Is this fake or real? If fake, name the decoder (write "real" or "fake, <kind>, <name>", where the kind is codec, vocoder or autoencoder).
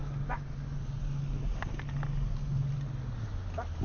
real